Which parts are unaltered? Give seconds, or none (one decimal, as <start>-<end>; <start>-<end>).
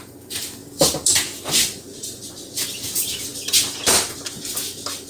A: 0.0-0.6; 2.3-5.1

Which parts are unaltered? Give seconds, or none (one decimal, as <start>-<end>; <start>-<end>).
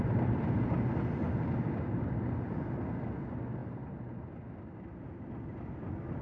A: 0.0-6.2